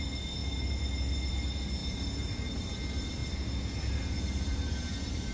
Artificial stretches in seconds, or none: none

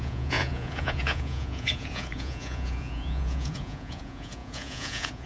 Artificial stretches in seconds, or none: 0.0-5.3 (vocoder, Vocos)